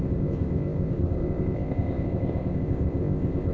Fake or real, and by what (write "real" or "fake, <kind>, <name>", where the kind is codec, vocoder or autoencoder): fake, codec, ZipCodec